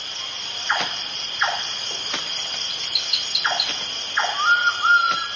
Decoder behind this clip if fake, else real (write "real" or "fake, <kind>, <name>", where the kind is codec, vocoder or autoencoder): real